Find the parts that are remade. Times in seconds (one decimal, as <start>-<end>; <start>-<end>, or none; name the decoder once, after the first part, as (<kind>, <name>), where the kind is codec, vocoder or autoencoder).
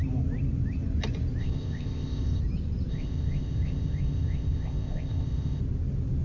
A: 1.4-2.4 (codec, ZipCodec); 2.9-5.6